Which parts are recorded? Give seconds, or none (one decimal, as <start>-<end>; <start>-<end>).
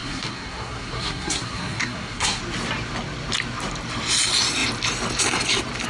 2.4-5.9